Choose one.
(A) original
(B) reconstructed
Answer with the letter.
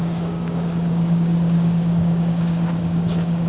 B